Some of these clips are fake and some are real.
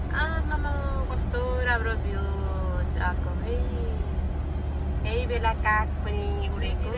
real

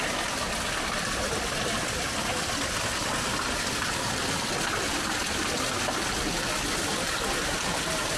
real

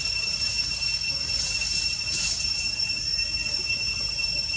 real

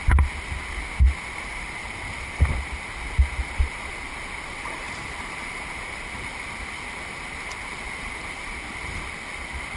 real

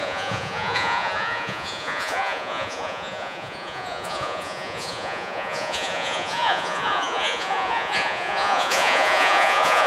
fake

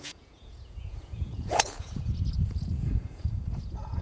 fake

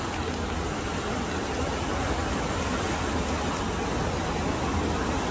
real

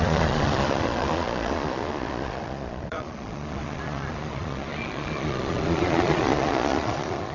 fake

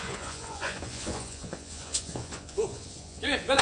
fake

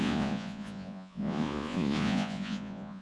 fake